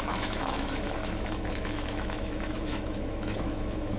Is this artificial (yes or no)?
yes